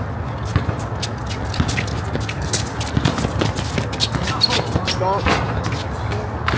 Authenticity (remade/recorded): recorded